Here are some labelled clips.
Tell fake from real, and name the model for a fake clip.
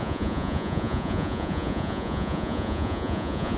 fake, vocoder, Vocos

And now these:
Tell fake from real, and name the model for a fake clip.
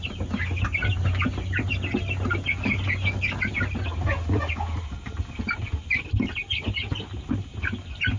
real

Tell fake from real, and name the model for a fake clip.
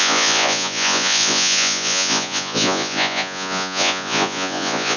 fake, vocoder, Vocos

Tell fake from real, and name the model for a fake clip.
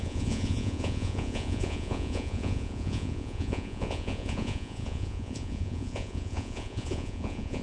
fake, vocoder, Vocos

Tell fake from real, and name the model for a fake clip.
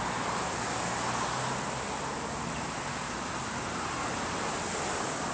real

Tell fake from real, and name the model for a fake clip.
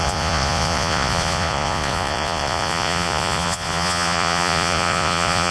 fake, vocoder, Vocos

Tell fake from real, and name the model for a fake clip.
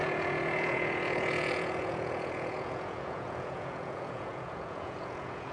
fake, vocoder, Vocos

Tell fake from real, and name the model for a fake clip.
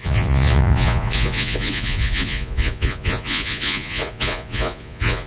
fake, vocoder, Vocos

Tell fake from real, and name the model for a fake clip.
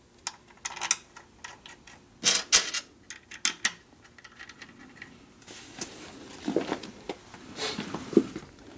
real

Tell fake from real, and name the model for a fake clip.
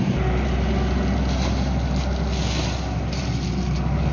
real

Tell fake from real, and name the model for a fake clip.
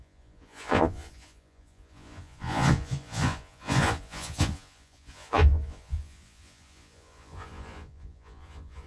fake, vocoder, Vocos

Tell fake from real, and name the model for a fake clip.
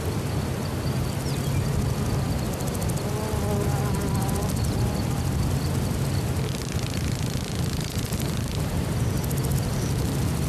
real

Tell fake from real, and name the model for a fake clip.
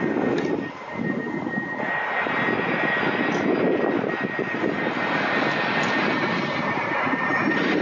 real